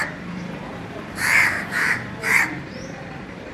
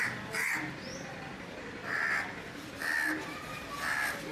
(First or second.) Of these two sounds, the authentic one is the second